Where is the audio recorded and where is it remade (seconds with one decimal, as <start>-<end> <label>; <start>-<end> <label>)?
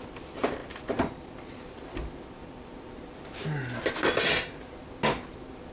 0.0-5.7 recorded